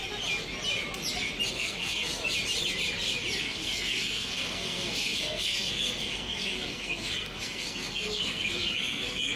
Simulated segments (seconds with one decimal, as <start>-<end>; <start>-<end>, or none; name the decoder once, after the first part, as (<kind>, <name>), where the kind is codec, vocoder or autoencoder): 1.5-2.2 (codec, SNAC); 3.4-9.4